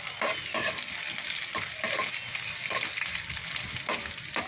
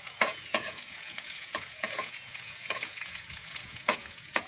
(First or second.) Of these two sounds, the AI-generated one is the second